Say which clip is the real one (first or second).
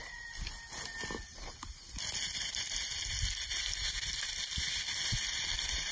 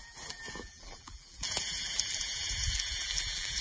first